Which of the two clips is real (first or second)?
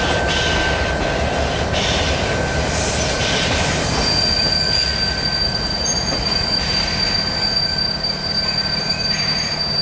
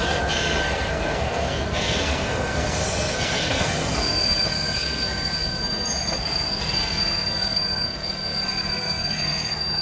first